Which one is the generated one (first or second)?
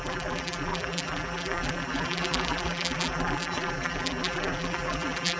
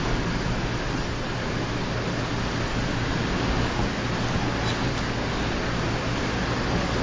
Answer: first